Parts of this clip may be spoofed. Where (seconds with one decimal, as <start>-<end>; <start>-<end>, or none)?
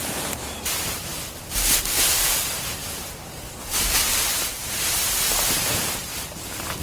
0.0-1.1; 2.0-6.8